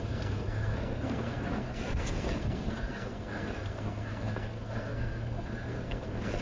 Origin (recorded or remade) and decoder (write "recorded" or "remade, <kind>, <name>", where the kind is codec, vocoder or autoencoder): remade, codec, SNAC